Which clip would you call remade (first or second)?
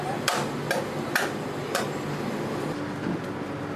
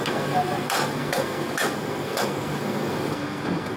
second